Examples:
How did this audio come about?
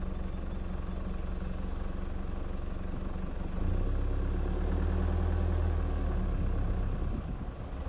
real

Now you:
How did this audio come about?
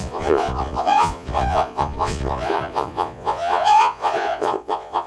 fake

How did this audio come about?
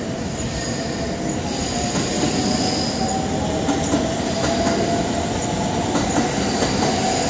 real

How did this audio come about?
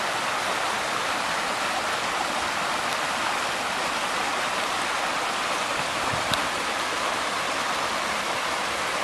real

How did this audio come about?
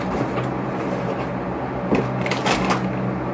real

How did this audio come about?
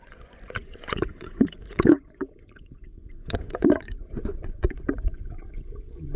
fake